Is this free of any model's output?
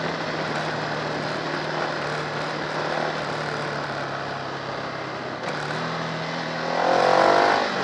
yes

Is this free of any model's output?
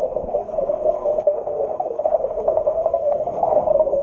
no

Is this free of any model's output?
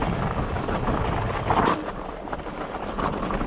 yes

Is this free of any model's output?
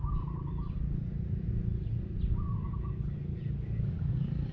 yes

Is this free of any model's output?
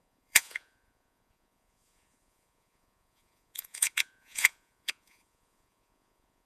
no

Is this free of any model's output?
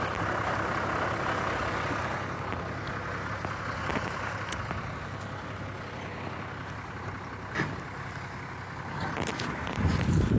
yes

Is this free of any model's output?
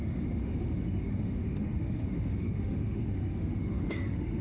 no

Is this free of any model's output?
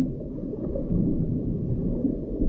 yes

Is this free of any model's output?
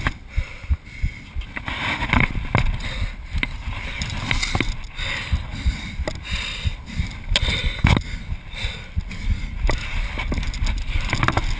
yes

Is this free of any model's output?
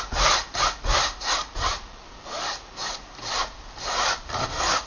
yes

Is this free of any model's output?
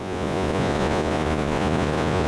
no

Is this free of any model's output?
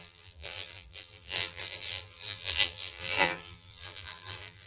no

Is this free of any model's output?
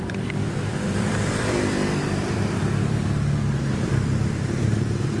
no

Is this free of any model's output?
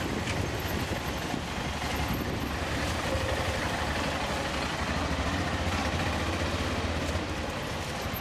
yes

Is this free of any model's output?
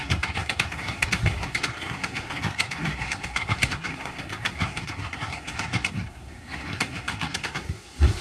no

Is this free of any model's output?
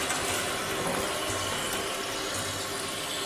yes